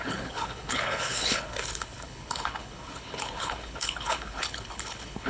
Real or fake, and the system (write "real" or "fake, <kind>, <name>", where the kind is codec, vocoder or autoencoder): fake, codec, HILCodec